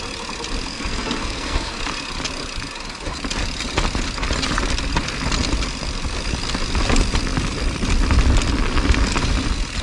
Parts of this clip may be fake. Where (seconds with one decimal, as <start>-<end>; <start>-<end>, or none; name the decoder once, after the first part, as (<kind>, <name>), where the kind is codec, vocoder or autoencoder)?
0.7-1.8 (codec, SNAC)